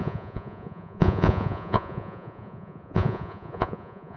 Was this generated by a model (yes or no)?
yes